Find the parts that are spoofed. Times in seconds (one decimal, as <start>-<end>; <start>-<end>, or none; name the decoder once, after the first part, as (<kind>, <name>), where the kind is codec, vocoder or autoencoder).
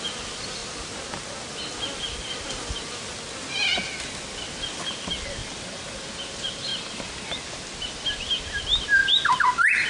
5.4-6.1 (vocoder, BigVGAN v2); 6.7-7.4; 9.0-9.9